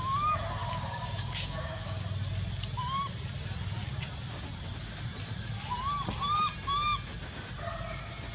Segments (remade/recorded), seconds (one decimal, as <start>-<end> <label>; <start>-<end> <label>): 0.0-0.6 recorded; 0.6-2.0 remade; 2.0-8.3 recorded